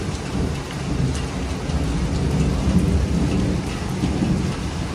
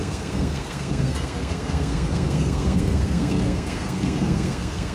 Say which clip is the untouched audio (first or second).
first